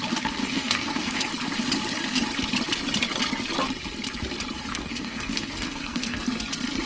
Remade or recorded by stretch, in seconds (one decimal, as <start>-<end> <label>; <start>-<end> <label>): 0.0-0.4 recorded; 0.4-1.3 remade; 1.3-4.7 recorded; 4.7-6.2 remade; 6.2-6.9 recorded

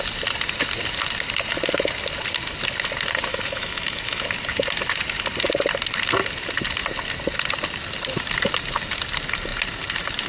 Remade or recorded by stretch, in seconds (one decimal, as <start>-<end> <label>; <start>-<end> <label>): 0.0-3.3 recorded; 3.3-4.2 remade; 4.2-10.3 recorded

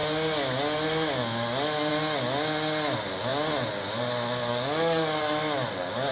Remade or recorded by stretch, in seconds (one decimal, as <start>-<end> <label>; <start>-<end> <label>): 0.0-4.5 recorded; 4.5-5.2 remade; 5.2-6.1 recorded

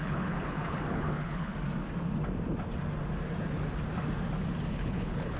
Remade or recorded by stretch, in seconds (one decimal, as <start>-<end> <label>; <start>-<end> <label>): 0.0-1.5 remade; 1.5-4.7 recorded; 4.7-5.4 remade

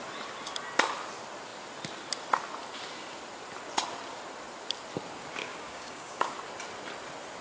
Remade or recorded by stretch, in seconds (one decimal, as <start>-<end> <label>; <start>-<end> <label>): 0.0-5.4 recorded; 5.4-6.3 remade; 6.3-7.4 recorded

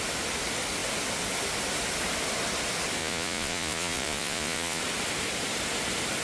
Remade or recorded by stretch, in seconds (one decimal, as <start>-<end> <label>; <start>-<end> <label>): 0.0-3.0 recorded; 3.0-4.8 remade; 4.8-6.2 recorded

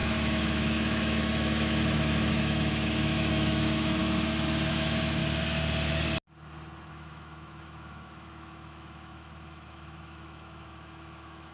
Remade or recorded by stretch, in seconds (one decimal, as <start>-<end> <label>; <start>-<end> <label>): 0.0-4.0 remade; 4.0-4.7 recorded; 4.7-5.2 remade; 5.2-6.9 recorded; 6.9-11.5 remade

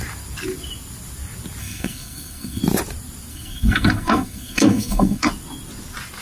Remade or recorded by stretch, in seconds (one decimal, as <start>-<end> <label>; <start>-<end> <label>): 0.0-1.6 recorded; 1.6-2.6 remade; 2.6-3.3 recorded; 3.3-5.3 remade; 5.3-6.2 recorded